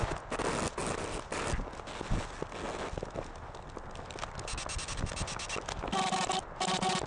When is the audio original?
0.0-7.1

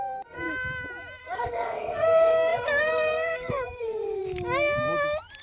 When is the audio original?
0.5-1.2; 4.2-5.4

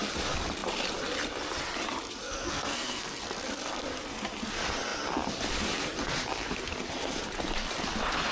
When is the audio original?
0.0-2.2; 3.2-8.3